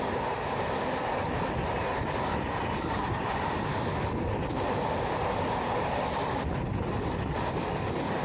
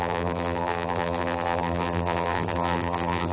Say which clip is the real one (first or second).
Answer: first